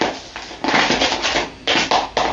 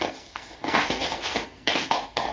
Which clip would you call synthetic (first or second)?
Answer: second